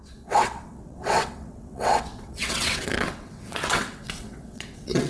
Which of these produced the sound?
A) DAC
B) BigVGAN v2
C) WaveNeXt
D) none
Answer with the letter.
C